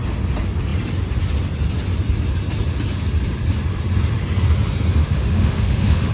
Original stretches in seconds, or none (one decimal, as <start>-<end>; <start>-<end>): 0.0-5.0